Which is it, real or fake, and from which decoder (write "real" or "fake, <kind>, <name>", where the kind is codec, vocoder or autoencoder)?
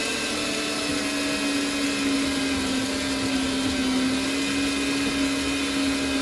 real